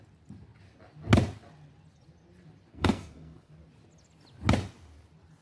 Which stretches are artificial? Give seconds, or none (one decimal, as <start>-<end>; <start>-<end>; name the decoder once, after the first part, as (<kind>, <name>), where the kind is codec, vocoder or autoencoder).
2.7-3.5 (codec, SNAC)